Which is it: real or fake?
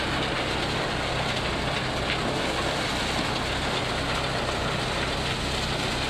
real